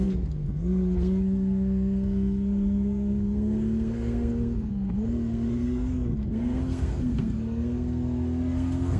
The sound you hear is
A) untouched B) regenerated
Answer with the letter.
B